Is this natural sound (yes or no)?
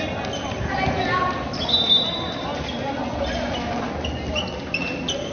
yes